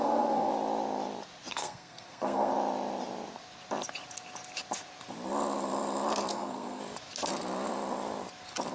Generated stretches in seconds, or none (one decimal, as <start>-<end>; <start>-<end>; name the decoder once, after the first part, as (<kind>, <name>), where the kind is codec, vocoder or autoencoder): 0.0-0.5 (codec, SNAC); 1.5-2.5; 6.3-6.8